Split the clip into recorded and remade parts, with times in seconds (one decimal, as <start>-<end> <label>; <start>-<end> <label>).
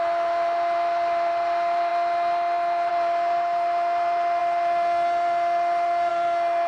0.0-6.7 recorded